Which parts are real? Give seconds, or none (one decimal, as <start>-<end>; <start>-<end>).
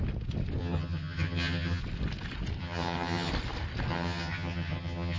0.0-0.6; 1.8-2.6; 3.3-3.9